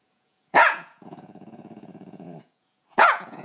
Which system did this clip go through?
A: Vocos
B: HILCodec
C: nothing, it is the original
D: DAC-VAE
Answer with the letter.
A